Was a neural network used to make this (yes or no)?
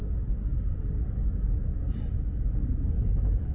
no